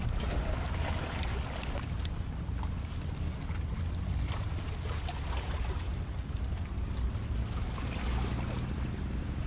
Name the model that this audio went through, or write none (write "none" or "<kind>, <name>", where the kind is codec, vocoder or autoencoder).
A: none